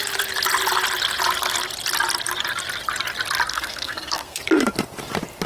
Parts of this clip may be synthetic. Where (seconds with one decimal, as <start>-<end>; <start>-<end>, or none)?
3.5-4.4